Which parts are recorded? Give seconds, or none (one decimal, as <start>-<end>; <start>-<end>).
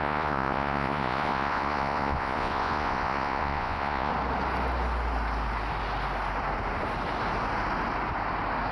4.1-8.7